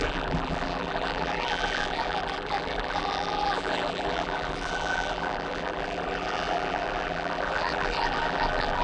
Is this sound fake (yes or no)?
yes